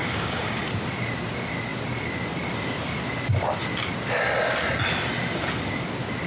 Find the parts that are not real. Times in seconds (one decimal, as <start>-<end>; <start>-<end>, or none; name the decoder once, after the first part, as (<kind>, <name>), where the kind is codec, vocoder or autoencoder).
0.0-0.7 (codec, DAC)